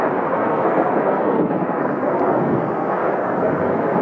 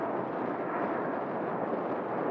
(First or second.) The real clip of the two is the second